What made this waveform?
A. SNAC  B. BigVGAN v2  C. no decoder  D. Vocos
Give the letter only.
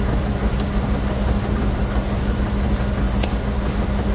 C